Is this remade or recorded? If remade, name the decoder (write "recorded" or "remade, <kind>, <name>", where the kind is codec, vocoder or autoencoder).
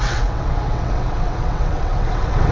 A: remade, vocoder, WaveNeXt